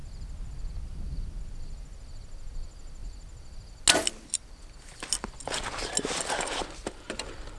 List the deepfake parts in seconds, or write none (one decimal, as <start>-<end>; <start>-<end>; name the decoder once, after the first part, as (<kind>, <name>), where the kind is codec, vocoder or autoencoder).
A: none